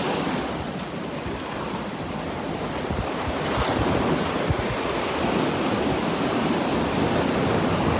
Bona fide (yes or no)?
yes